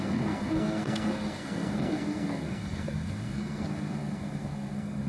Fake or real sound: fake